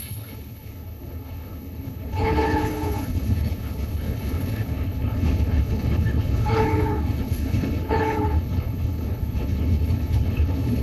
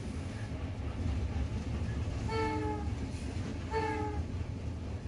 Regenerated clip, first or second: first